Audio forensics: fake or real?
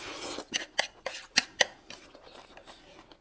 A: real